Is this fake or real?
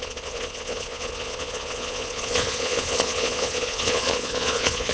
fake